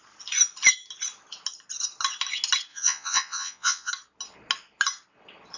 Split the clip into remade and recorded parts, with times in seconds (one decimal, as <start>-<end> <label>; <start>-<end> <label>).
0.0-2.7 recorded; 2.7-3.9 remade; 3.9-5.6 recorded